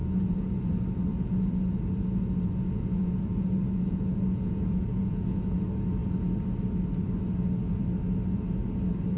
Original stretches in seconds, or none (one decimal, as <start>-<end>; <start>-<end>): 0.7-1.1; 2.2-2.6; 5.6-9.2